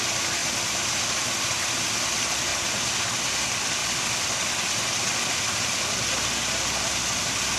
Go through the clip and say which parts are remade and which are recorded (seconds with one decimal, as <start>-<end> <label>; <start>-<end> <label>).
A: 0.0-3.8 recorded; 3.8-4.7 remade; 4.7-7.6 recorded